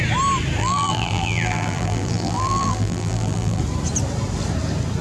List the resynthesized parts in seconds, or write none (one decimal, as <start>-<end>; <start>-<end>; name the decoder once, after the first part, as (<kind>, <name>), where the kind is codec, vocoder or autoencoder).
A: 0.6-3.6 (vocoder, BigVGAN v2)